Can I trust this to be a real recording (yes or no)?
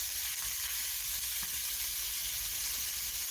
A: yes